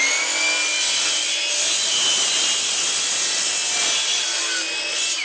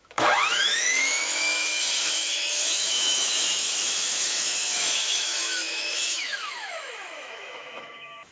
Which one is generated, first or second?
second